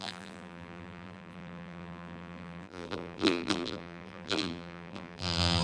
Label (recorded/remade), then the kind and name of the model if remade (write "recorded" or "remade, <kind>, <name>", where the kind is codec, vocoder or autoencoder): remade, vocoder, BigVGAN v2